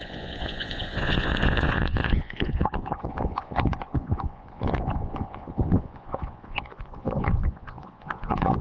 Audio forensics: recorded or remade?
remade